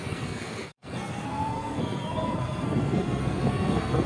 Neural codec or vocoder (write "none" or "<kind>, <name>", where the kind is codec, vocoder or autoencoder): codec, SNAC